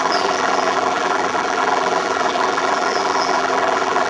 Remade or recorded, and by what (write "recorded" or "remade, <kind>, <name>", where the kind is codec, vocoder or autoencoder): remade, vocoder, BigVGAN v2